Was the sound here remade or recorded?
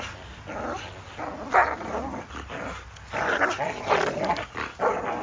recorded